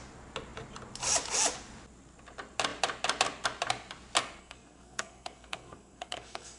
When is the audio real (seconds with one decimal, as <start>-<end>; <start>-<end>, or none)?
0.0-4.4